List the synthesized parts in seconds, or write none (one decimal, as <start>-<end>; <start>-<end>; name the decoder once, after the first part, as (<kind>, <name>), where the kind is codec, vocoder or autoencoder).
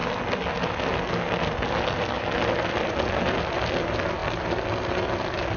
none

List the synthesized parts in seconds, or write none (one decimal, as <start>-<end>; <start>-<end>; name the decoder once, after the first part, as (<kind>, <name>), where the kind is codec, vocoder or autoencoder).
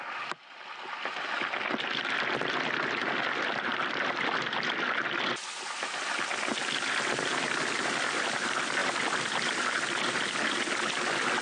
3.7-4.9 (vocoder, BigVGAN v2)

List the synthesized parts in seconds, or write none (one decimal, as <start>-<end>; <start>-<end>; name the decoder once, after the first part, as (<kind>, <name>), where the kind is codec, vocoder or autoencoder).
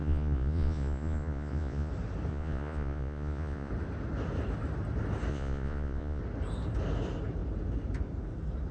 0.0-1.9 (vocoder, Vocos); 2.3-3.7; 5.3-6.2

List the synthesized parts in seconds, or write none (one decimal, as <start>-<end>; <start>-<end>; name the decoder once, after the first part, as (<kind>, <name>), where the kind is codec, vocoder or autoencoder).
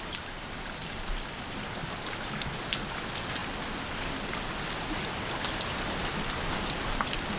none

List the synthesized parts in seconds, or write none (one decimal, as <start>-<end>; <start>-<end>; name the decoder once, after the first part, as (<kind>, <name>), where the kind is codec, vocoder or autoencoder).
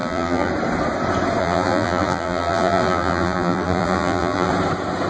0.0-0.5 (vocoder, BigVGAN v2); 1.4-4.5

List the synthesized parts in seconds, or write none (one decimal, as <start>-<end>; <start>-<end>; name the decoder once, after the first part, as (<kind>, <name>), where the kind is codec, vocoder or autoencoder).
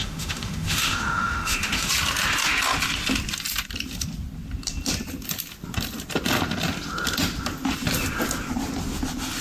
0.0-1.9 (autoencoder, DAC-VAE)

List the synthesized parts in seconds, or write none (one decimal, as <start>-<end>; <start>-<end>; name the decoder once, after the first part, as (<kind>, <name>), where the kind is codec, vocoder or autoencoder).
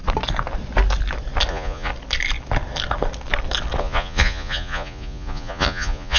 1.5-1.9 (vocoder, Vocos); 3.8-6.2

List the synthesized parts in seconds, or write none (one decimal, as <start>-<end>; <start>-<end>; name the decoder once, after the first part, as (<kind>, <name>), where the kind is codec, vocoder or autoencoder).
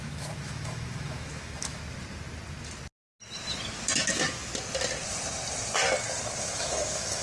0.0-1.8 (autoencoder, DAC-VAE); 4.1-4.5; 6.4-7.2